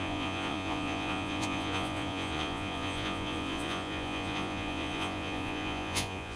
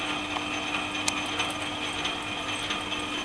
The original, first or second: second